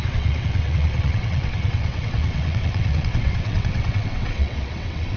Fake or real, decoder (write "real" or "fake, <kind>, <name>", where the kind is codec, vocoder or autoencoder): fake, vocoder, WaveNeXt